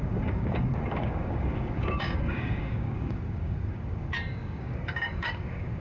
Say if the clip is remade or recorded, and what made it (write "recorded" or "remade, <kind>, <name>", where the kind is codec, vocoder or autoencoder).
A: remade, codec, DAC